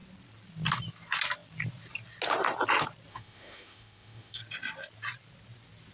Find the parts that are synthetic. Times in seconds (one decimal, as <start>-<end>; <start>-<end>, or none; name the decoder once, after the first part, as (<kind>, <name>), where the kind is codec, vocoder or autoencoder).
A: 3.1-4.4 (autoencoder, DAC-VAE)